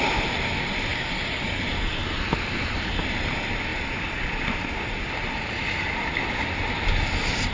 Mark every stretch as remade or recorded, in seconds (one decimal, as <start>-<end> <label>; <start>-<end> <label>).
0.0-0.9 recorded; 0.9-1.6 remade; 1.6-7.5 recorded

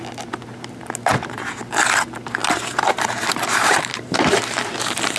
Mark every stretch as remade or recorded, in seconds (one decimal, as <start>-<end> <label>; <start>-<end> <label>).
0.0-1.1 recorded; 1.1-1.7 remade; 1.7-2.4 recorded; 2.4-4.3 remade; 4.3-5.2 recorded

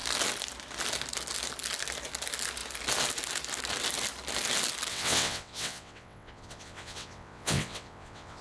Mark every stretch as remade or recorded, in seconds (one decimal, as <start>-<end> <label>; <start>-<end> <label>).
0.0-4.9 recorded; 4.9-8.4 remade

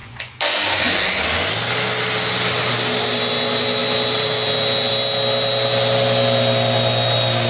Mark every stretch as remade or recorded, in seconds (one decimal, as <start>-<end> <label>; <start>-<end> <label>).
0.0-0.9 remade; 0.9-7.5 recorded

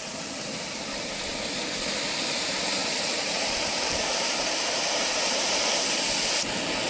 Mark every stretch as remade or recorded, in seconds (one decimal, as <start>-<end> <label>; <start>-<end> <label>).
0.0-2.8 recorded; 2.8-6.1 remade; 6.1-6.9 recorded